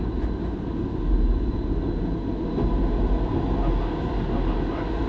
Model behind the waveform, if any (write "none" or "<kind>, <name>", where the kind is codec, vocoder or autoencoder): none